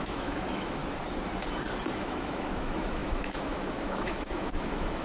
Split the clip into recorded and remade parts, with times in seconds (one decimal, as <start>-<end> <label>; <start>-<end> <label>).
0.0-0.8 remade; 0.8-1.9 recorded; 1.9-5.0 remade